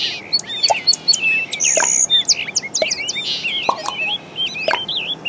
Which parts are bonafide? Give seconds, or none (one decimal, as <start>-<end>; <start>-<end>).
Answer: 0.0-5.3